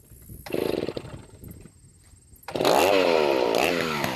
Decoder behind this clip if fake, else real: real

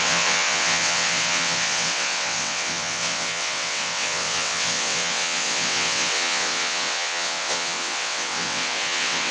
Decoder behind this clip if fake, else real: fake, vocoder, WaveNeXt